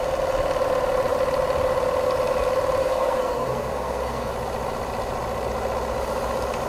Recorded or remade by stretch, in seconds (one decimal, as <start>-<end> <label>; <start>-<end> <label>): 0.0-2.8 recorded; 2.8-4.3 remade; 4.3-6.7 recorded